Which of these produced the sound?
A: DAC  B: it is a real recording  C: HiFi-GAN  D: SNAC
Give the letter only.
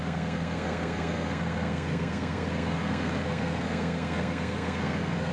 D